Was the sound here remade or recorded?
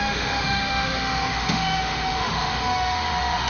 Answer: remade